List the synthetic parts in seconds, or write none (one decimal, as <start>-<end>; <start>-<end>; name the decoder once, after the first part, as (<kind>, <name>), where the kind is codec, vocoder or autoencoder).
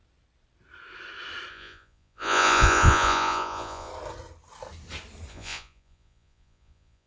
1.5-3.9 (vocoder, Vocos); 5.3-7.1